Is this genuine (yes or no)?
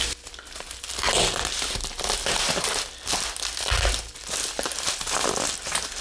yes